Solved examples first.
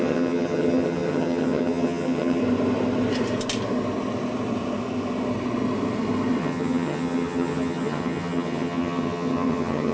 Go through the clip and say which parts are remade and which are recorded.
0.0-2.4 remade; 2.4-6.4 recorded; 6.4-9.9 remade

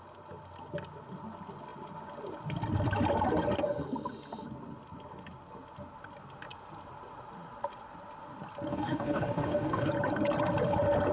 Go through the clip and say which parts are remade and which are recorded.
0.0-8.7 recorded; 8.7-9.9 remade; 9.9-11.1 recorded

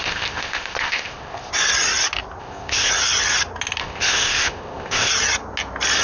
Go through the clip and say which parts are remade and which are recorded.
0.0-1.5 remade; 1.5-2.4 recorded; 2.4-2.9 remade; 2.9-3.8 recorded; 3.8-5.1 remade; 5.1-6.0 recorded